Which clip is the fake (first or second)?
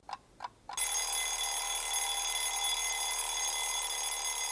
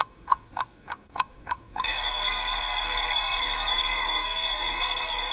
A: second